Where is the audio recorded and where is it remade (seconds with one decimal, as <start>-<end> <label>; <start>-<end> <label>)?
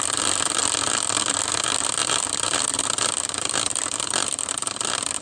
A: 0.0-2.0 recorded; 2.0-5.2 remade